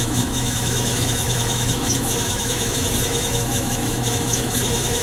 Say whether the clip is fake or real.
fake